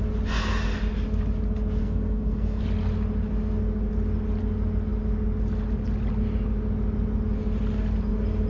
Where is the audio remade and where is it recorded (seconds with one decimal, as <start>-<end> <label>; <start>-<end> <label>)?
0.0-1.8 recorded; 1.8-2.6 remade; 2.6-8.5 recorded